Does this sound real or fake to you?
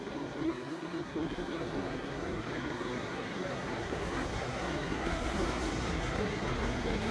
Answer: fake